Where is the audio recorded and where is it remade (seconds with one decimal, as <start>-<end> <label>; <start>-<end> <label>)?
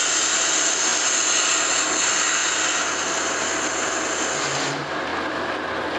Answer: 0.0-6.0 recorded